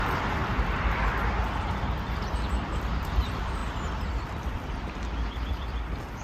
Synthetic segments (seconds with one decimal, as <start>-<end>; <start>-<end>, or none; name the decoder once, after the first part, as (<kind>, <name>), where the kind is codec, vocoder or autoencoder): 0.0-0.4 (vocoder, BigVGAN v2); 1.8-3.6; 4.1-6.2